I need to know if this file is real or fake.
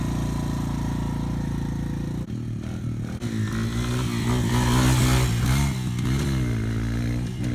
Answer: real